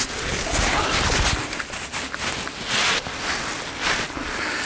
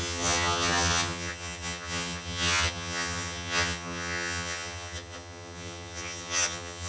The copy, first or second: second